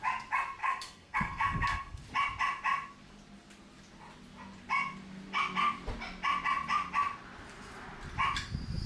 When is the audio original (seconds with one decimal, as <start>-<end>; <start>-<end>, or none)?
0.0-0.6; 2.0-8.9